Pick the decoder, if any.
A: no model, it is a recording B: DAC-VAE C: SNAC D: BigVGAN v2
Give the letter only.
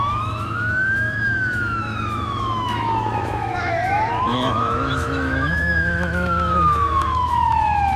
B